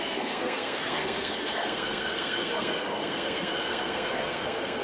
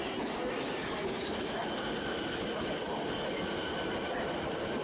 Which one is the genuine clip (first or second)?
second